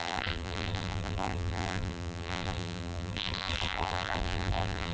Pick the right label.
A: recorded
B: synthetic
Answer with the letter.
B